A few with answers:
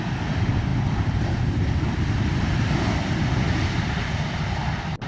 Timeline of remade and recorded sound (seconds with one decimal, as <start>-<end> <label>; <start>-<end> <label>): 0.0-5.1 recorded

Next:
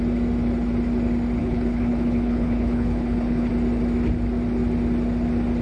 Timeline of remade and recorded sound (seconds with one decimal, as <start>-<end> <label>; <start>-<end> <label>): 0.0-1.4 recorded; 1.4-3.5 remade; 3.5-5.6 recorded

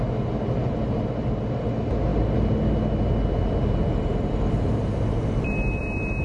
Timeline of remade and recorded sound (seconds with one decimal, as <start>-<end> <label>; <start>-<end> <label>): 0.0-6.2 recorded

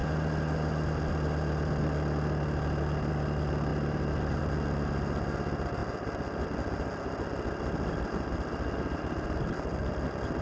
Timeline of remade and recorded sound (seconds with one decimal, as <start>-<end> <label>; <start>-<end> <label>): 0.0-10.4 recorded